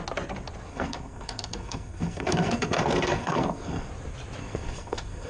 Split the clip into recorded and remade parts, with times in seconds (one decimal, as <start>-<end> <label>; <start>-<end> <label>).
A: 0.0-0.7 recorded; 0.7-3.9 remade; 3.9-4.4 recorded; 4.4-5.3 remade